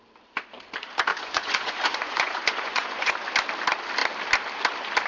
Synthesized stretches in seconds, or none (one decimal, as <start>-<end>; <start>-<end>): 1.1-3.1